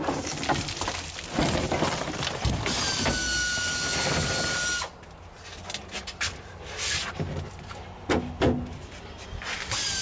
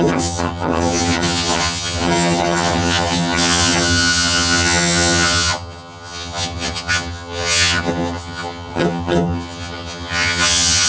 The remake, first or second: second